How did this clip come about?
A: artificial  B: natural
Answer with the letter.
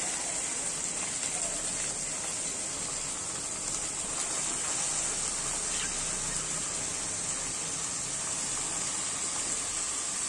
B